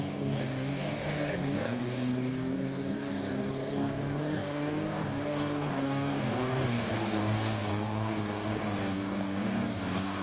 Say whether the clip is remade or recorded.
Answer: remade